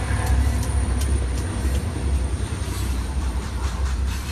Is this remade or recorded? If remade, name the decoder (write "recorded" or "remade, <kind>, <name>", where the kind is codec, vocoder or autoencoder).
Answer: remade, vocoder, BigVGAN v2